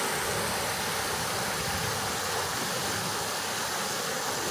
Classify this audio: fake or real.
real